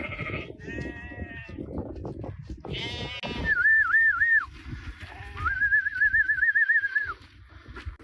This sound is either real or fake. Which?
real